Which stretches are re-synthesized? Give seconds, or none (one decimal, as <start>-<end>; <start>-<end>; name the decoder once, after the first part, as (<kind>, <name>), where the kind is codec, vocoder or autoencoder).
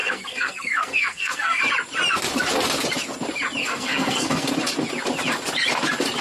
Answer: 0.0-1.6 (codec, SNAC); 3.6-4.5